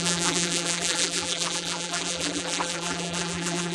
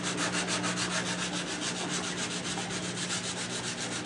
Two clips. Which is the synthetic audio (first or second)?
first